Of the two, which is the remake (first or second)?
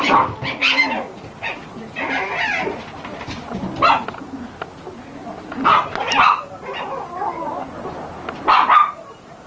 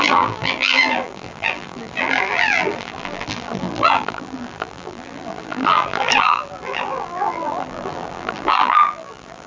second